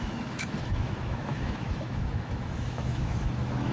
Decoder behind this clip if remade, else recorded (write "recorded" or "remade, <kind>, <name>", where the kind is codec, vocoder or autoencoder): remade, autoencoder, DAC-VAE